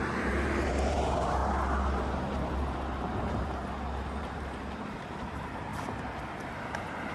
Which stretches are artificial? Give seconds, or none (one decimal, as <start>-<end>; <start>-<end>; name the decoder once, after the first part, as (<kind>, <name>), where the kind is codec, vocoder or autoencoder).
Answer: 0.0-1.4 (vocoder, BigVGAN v2); 4.2-5.7; 6.5-7.1